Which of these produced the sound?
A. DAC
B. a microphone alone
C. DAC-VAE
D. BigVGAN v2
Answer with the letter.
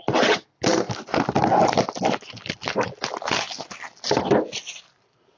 B